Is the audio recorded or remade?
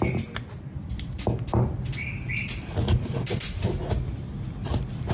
recorded